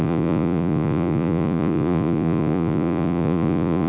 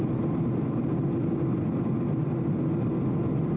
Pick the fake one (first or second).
first